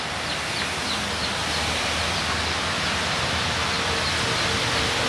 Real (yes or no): yes